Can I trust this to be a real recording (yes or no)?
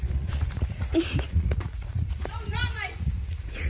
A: no